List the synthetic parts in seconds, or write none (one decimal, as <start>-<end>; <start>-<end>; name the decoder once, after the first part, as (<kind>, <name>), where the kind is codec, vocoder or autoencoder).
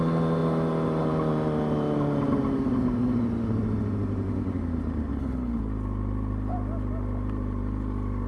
5.1-5.6 (codec, HILCodec)